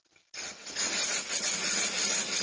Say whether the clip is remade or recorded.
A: recorded